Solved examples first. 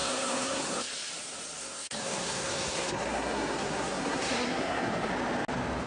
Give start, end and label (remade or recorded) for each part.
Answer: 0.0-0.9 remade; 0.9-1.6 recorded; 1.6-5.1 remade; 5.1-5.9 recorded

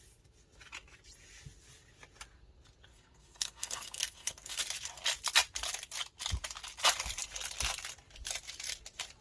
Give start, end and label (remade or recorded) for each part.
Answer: 0.0-2.9 recorded; 2.9-4.6 remade; 4.6-9.2 recorded

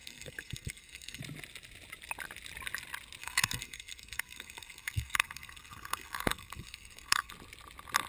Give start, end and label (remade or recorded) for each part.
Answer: 0.0-1.2 remade; 1.2-3.2 recorded; 3.2-7.3 remade; 7.3-8.1 recorded

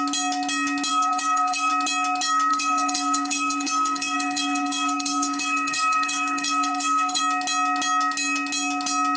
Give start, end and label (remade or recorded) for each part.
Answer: 0.0-0.9 recorded; 0.9-1.7 remade; 1.7-2.5 recorded; 2.5-7.2 remade; 7.2-9.2 recorded

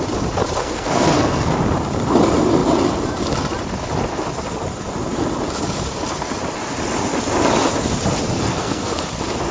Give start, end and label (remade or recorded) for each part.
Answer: 0.0-0.6 recorded; 0.6-1.5 remade; 1.5-8.5 recorded; 8.5-9.0 remade; 9.0-9.5 recorded

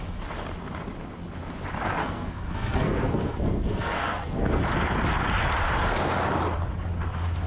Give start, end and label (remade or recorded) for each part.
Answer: 0.0-2.0 recorded; 2.0-4.6 remade; 4.6-7.5 recorded

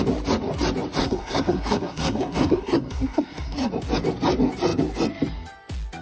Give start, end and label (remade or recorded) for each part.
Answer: 0.0-1.0 recorded; 1.0-3.7 remade; 3.7-6.0 recorded